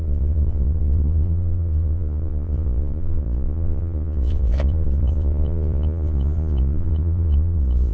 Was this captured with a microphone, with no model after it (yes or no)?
no